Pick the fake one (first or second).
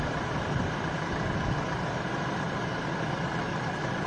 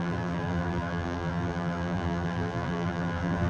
second